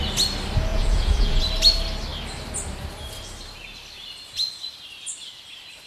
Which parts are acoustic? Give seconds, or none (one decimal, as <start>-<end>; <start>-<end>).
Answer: 0.0-0.7; 1.4-5.9